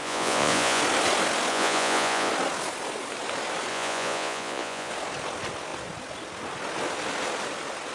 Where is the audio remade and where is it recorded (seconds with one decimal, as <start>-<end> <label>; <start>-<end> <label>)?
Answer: 0.0-0.8 remade; 0.8-1.5 recorded; 1.5-2.3 remade; 2.3-3.7 recorded; 3.7-4.9 remade; 4.9-7.9 recorded